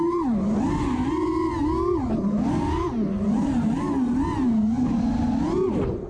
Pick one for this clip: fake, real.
real